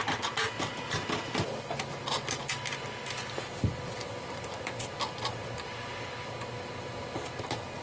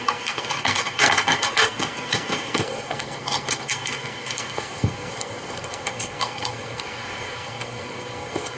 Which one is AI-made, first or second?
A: second